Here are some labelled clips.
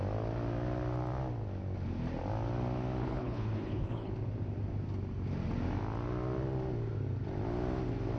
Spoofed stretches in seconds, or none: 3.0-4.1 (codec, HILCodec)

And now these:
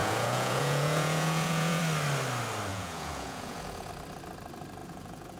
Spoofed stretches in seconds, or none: 0.0-1.8 (vocoder, Vocos); 2.7-3.9; 4.8-5.4

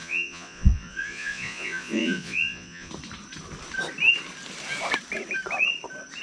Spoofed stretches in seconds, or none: 0.0-2.9 (vocoder, Vocos)